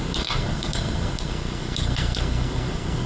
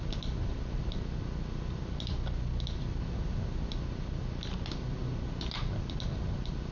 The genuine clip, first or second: second